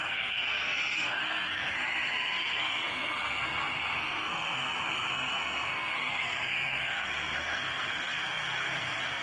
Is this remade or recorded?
remade